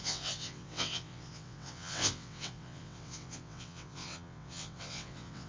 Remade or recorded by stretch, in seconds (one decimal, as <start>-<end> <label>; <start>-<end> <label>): 0.0-5.5 remade

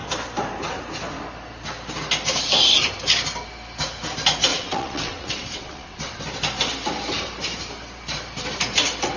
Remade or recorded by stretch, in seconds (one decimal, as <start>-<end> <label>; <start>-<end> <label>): 0.0-4.5 recorded; 4.5-6.2 remade; 6.2-9.2 recorded